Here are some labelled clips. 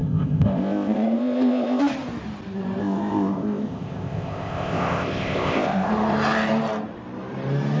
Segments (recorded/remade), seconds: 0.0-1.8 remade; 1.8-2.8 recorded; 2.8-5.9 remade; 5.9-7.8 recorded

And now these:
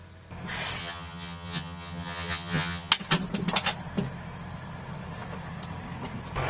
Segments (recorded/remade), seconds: 0.0-0.8 recorded; 0.8-2.9 remade; 2.9-6.5 recorded

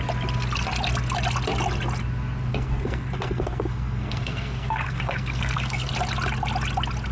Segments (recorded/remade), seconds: 0.0-2.5 recorded; 2.5-5.9 remade; 5.9-7.1 recorded

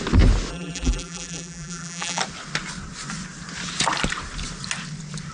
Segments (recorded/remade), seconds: 0.0-0.5 recorded; 0.5-2.2 remade; 2.2-5.3 recorded